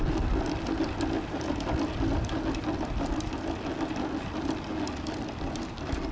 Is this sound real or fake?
real